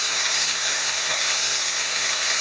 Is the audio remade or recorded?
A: remade